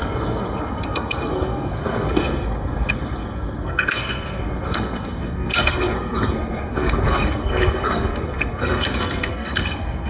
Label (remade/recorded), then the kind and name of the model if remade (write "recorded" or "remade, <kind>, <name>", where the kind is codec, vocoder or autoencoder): remade, codec, SNAC